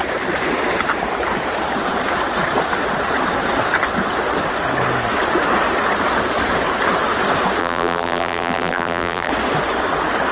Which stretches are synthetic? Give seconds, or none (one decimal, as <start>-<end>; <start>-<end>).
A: 7.6-9.3